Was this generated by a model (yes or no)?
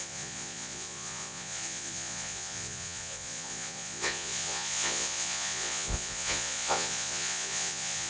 yes